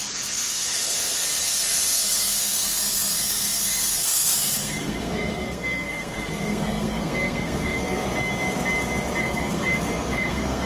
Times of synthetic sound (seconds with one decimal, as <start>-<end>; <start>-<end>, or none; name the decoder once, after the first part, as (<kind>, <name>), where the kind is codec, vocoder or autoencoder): 0.0-8.0 (codec, SNAC); 9.2-10.7

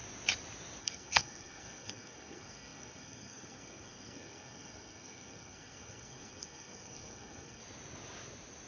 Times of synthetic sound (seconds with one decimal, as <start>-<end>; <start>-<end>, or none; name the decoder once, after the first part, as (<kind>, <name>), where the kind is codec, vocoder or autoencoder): 0.8-7.6 (codec, SNAC)

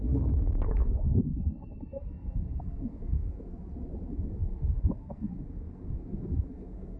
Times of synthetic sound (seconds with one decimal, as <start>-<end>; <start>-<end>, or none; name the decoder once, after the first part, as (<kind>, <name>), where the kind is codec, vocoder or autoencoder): 0.0-3.4 (codec, SNAC); 4.1-7.0

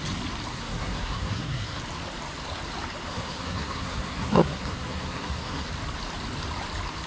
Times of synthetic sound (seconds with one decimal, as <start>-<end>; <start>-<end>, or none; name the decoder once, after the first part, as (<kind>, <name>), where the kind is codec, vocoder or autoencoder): 0.5-1.8 (codec, SNAC); 3.1-5.7